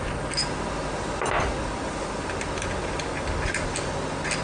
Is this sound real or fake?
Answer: real